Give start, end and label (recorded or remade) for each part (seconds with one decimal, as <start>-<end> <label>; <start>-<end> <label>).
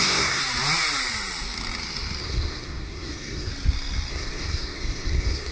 0.0-0.4 remade; 0.4-2.2 recorded; 2.2-3.5 remade; 3.5-4.1 recorded; 4.1-5.5 remade